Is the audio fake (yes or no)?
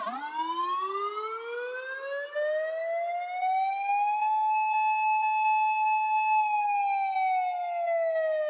no